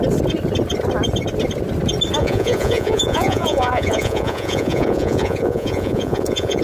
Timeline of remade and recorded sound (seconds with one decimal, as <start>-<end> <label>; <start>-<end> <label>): 0.0-2.2 recorded; 2.2-6.6 remade